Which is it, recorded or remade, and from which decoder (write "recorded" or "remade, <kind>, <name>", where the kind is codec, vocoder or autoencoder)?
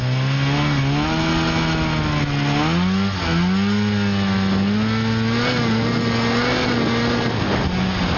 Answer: recorded